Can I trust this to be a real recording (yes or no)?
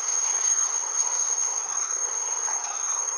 no